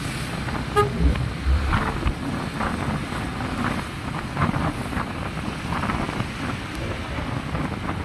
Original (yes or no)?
yes